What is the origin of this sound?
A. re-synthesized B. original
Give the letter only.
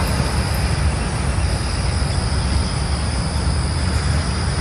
B